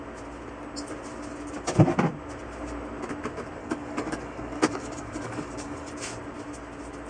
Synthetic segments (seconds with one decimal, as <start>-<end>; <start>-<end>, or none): 3.6-5.9